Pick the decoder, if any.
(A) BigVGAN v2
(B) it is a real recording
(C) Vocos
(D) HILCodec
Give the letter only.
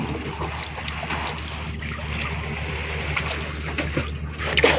B